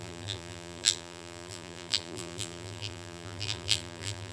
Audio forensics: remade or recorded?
remade